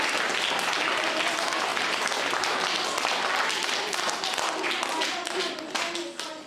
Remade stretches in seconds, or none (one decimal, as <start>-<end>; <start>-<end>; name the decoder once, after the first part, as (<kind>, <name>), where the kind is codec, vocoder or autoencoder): none